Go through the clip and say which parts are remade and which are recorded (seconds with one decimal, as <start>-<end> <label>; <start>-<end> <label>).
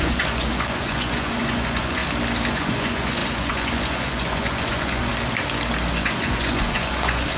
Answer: 0.0-2.0 remade; 2.0-2.5 recorded; 2.5-5.1 remade; 5.1-5.9 recorded; 5.9-7.4 remade